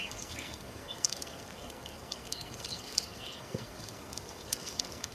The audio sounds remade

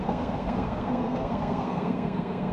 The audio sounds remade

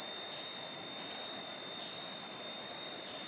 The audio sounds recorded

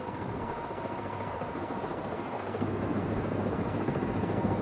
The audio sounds remade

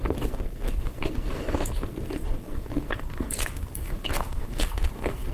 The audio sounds remade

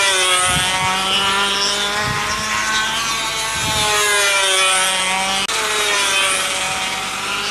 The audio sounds recorded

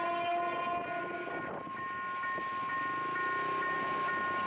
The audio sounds recorded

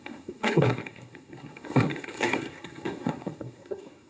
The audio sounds remade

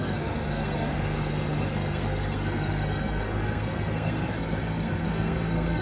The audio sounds remade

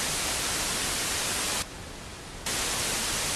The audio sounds recorded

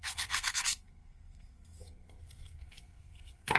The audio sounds remade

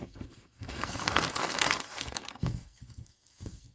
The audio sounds remade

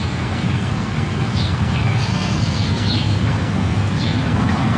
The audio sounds remade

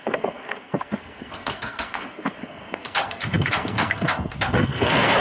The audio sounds remade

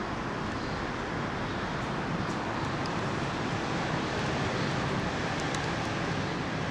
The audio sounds recorded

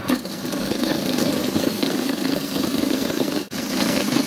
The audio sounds remade